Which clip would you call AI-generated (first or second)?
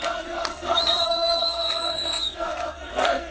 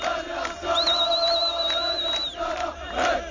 first